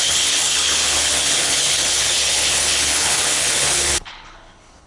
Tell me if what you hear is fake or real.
fake